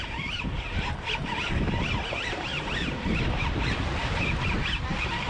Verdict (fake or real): fake